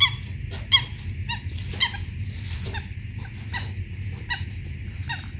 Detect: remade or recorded recorded